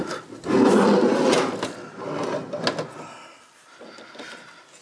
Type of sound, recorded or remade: recorded